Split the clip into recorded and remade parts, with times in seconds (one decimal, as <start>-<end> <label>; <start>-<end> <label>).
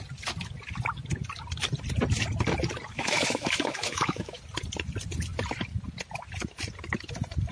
0.0-2.9 recorded; 2.9-4.4 remade; 4.4-7.5 recorded